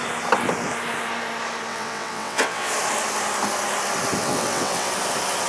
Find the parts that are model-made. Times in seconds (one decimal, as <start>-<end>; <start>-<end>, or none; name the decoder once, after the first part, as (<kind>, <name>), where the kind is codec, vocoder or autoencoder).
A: 1.7-2.7 (vocoder, WaveNeXt); 4.2-4.9